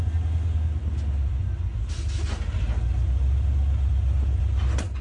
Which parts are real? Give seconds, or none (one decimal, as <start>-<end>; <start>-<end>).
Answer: 0.0-5.0